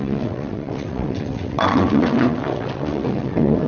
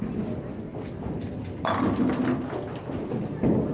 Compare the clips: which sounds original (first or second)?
second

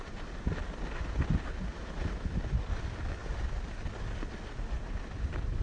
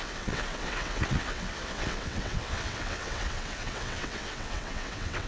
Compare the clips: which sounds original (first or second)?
first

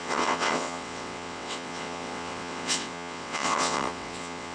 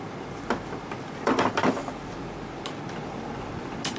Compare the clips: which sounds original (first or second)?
second